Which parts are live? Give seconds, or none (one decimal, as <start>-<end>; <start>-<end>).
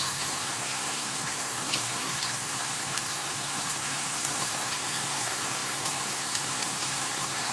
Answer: none